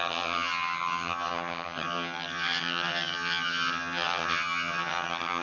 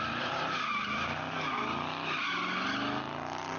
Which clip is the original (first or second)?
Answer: second